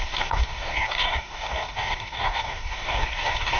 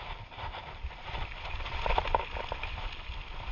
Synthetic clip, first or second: first